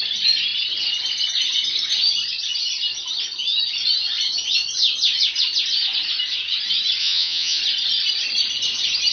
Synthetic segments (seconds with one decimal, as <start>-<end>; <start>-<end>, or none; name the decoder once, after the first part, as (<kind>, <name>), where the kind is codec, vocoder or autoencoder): 7.0-7.6 (vocoder, Vocos)